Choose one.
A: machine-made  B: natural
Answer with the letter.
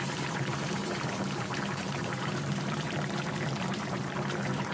A